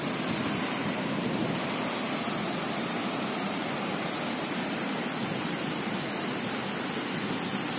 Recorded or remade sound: remade